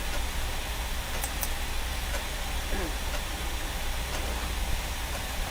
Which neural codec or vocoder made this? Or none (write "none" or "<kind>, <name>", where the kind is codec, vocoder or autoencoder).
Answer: none